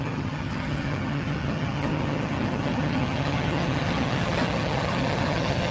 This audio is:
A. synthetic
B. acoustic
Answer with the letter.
A